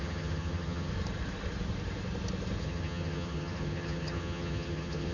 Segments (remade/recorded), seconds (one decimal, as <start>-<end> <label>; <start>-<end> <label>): 0.0-0.9 remade; 0.9-2.6 recorded; 2.6-5.1 remade

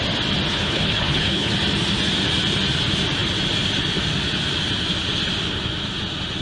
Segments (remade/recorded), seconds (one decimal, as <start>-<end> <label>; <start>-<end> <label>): 0.0-0.5 recorded; 0.5-1.5 remade; 1.5-6.4 recorded

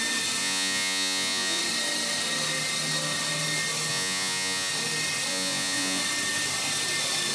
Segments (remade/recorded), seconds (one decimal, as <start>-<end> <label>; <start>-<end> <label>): 0.0-0.4 recorded; 0.4-1.6 remade; 1.6-3.9 recorded; 3.9-4.7 remade; 4.7-5.3 recorded; 5.3-6.0 remade; 6.0-7.3 recorded

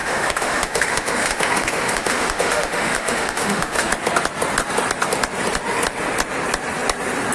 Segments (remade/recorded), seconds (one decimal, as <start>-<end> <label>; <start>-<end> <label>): 0.0-3.9 remade; 3.9-7.3 recorded

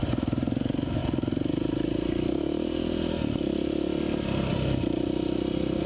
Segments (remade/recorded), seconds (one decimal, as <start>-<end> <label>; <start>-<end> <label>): 0.0-5.9 recorded